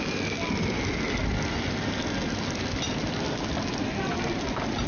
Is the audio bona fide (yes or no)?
yes